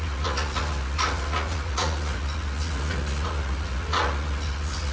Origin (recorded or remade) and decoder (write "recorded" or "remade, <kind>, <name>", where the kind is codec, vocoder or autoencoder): remade, vocoder, Vocos